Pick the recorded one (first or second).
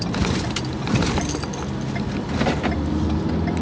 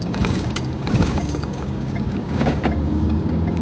first